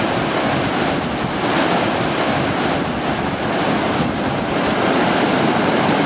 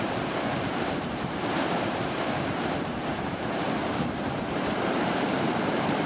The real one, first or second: first